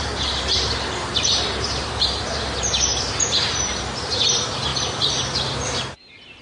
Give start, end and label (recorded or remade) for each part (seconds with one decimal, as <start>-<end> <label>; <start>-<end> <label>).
0.0-6.4 remade